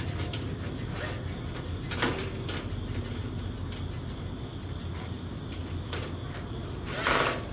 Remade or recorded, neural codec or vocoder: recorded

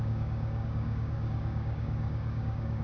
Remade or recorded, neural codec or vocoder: remade, codec, DAC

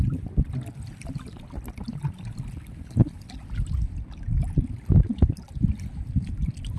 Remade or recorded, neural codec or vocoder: recorded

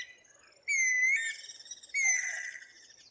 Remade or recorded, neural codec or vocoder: recorded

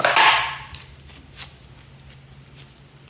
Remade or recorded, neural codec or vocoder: recorded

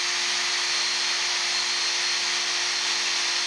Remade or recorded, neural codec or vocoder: recorded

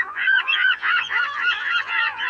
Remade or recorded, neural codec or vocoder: remade, vocoder, Vocos